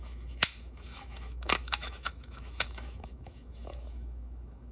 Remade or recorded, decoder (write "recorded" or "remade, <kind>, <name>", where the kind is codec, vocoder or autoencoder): remade, autoencoder, DAC-VAE